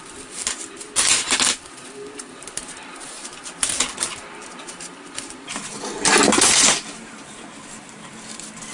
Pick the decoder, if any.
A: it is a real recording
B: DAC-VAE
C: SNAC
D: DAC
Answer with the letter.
A